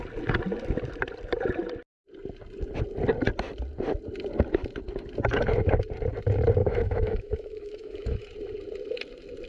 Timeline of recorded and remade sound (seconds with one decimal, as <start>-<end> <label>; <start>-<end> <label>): 0.0-6.6 recorded; 6.6-8.3 remade; 8.3-9.5 recorded